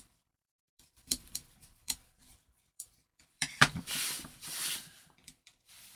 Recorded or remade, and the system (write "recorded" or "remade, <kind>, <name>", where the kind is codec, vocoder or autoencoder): remade, vocoder, BigVGAN v2